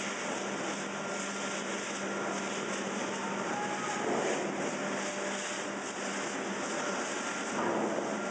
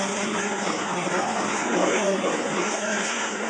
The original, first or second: first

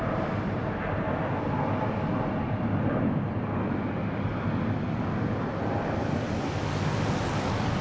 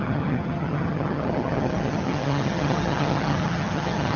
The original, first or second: first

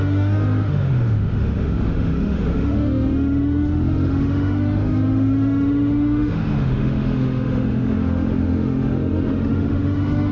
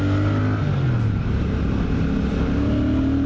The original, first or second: second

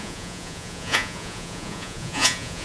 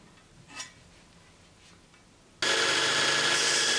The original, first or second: second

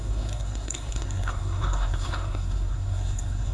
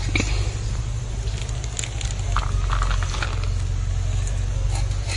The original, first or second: second